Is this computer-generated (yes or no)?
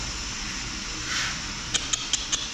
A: no